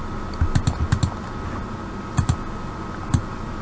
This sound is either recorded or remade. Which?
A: recorded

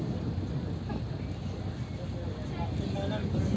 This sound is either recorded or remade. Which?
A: recorded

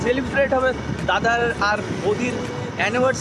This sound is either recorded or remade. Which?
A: recorded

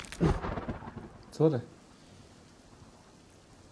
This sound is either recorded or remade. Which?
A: recorded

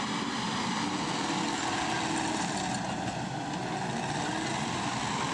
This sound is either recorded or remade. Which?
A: recorded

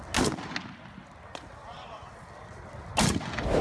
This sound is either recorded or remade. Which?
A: recorded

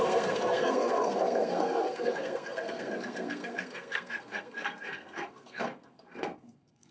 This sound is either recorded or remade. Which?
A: remade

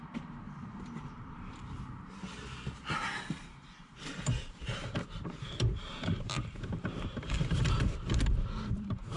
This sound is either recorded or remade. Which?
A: remade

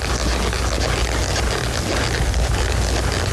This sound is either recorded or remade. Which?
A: recorded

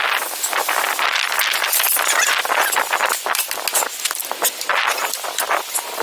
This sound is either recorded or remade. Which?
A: recorded